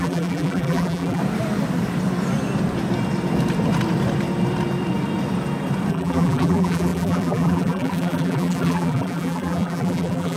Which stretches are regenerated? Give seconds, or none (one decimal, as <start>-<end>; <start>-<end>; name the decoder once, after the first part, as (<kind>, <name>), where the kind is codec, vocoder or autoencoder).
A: 0.0-1.2 (vocoder, BigVGAN v2); 5.9-10.4